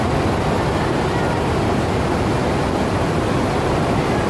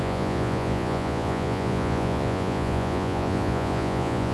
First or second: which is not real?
second